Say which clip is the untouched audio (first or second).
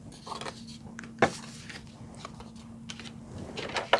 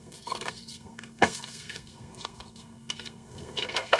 first